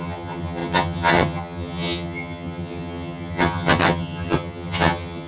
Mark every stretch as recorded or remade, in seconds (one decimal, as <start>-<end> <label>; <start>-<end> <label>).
0.0-5.3 remade